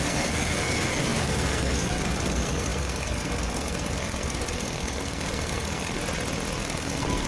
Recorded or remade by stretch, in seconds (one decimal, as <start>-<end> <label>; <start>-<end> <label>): 0.0-6.0 remade; 6.0-6.6 recorded; 6.6-7.3 remade